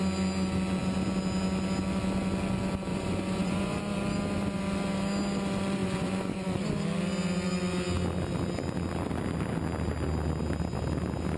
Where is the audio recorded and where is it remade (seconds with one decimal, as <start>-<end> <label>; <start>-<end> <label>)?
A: 0.0-2.9 recorded; 2.9-3.8 remade; 3.8-5.8 recorded; 5.8-6.7 remade; 6.7-11.4 recorded